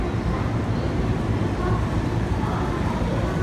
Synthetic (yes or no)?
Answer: no